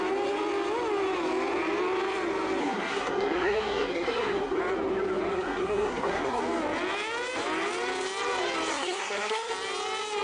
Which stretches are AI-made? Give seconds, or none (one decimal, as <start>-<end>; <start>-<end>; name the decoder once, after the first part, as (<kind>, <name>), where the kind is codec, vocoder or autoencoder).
2.6-4.6 (codec, SNAC); 5.3-6.4; 8.7-9.5